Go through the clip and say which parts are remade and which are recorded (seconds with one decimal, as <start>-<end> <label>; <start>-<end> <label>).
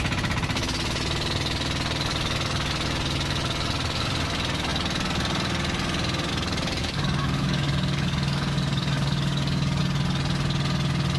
0.0-6.8 recorded; 6.8-9.8 remade; 9.8-11.2 recorded